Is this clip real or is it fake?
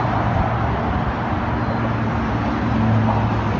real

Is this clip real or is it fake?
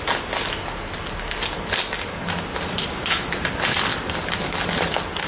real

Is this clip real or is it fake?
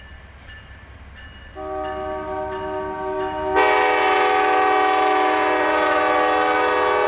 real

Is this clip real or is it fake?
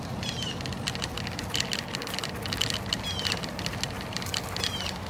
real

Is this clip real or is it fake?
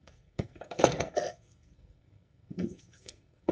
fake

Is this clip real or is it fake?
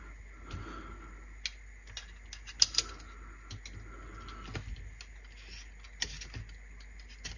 real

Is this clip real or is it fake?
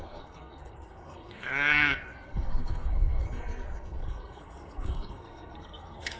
fake